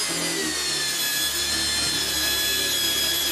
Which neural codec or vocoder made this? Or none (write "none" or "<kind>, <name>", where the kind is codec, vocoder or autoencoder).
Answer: none